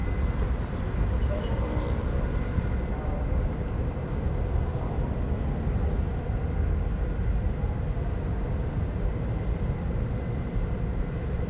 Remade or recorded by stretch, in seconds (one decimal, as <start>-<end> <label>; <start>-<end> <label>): 0.0-11.5 recorded